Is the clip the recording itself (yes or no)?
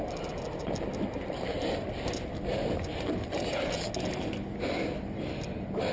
yes